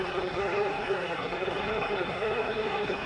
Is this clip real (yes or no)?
no